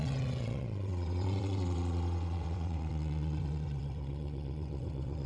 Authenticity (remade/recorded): remade